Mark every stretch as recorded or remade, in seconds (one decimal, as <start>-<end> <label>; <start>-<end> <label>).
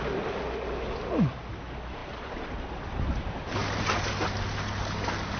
0.0-5.4 recorded